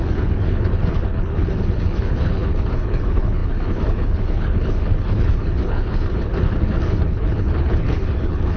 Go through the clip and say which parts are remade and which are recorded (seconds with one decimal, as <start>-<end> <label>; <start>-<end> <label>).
0.0-8.6 remade